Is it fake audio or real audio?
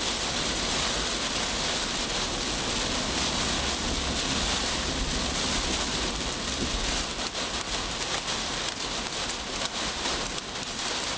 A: real